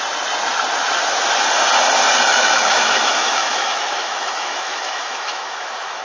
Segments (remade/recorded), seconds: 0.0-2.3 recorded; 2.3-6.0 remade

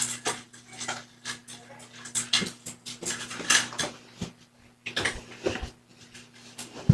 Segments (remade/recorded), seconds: 0.0-6.9 recorded

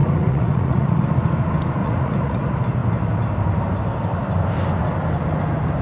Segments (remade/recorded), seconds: 0.0-1.0 remade; 1.0-1.8 recorded; 1.8-2.4 remade; 2.4-5.8 recorded